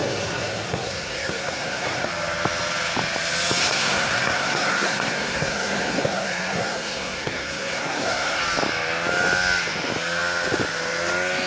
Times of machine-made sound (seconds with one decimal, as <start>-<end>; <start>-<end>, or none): 0.0-2.1; 3.6-8.4

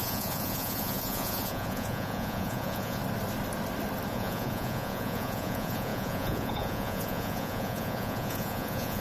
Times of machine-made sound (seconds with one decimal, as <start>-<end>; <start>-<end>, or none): 0.0-3.0; 4.1-9.0

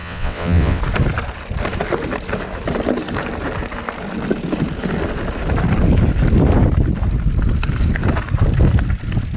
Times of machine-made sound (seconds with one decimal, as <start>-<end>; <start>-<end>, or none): 0.0-0.8

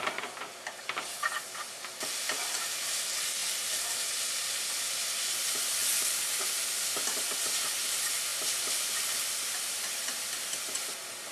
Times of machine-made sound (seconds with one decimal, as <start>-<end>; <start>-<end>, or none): none

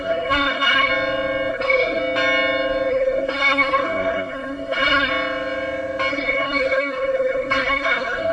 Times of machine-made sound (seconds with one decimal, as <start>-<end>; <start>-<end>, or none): 0.0-0.9; 1.5-2.0; 2.9-5.1; 6.1-8.3

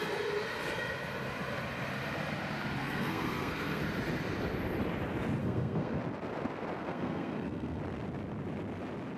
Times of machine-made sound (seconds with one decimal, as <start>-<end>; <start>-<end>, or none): 2.8-3.8; 5.4-6.0; 6.8-7.8